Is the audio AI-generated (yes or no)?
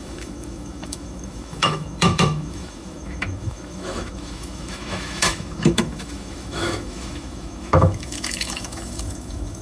yes